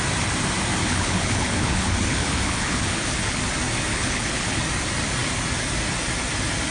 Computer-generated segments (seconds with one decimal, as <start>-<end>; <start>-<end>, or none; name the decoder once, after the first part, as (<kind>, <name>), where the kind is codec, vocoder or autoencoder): 0.8-3.4 (codec, HILCodec); 3.9-4.6

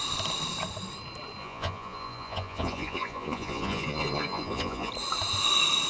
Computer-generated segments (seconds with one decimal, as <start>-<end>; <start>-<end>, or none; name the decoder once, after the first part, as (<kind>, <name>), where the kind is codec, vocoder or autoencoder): 1.4-4.9 (vocoder, Vocos)

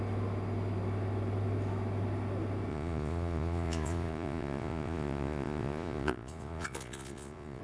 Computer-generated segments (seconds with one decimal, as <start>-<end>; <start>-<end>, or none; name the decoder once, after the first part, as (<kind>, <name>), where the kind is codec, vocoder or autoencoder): 2.7-7.6 (vocoder, Vocos)

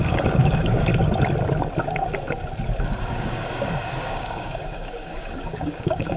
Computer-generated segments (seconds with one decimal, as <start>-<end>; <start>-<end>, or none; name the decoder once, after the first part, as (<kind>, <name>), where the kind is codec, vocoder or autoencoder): 0.0-0.9 (codec, DAC); 3.0-6.2

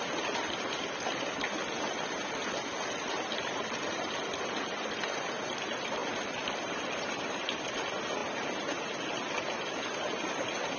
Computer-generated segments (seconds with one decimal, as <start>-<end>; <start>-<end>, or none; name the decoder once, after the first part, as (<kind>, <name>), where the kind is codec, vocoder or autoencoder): none

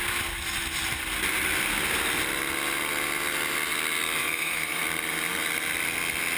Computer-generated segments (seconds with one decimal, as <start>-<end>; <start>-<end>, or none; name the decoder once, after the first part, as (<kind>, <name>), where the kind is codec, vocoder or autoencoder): 4.2-4.8 (autoencoder, DAC-VAE)